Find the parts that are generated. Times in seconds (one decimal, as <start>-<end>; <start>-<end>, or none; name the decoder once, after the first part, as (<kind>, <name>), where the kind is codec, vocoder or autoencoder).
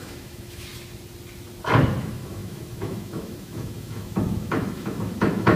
0.0-0.7 (autoencoder, DAC-VAE); 2.0-5.6